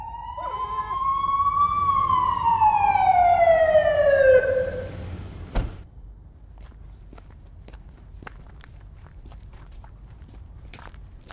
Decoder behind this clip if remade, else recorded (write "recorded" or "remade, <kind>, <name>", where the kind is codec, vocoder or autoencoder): remade, vocoder, BigVGAN v2